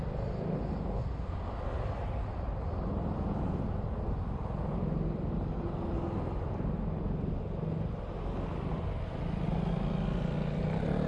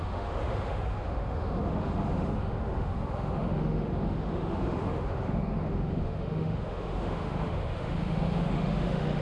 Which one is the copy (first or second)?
second